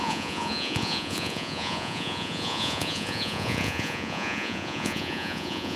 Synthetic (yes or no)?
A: yes